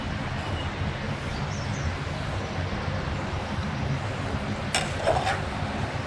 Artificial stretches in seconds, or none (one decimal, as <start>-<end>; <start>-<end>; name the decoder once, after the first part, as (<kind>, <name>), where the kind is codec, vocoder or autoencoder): none